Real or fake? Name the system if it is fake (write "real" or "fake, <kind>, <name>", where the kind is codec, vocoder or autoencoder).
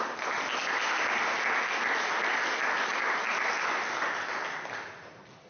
real